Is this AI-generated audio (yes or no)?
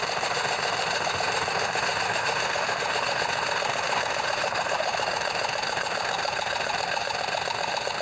yes